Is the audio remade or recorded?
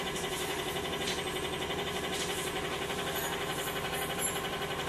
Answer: recorded